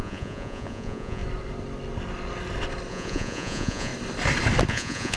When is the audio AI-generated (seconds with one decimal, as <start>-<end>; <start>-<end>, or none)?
0.0-1.2; 2.9-3.9; 4.7-5.2